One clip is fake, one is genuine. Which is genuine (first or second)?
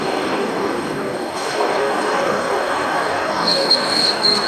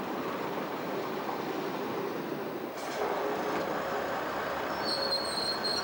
second